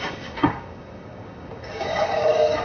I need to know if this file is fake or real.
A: fake